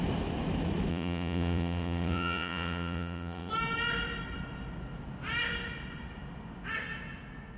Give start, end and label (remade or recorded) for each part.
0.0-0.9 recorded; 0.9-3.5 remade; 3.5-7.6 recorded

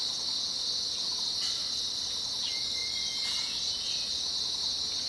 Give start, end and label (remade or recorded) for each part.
0.0-5.1 recorded